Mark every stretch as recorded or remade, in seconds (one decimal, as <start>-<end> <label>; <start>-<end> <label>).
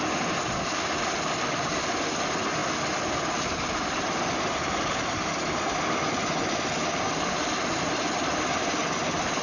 0.0-9.4 recorded